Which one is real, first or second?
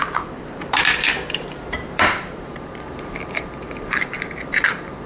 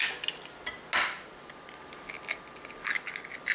second